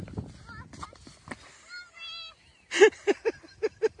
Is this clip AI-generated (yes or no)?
no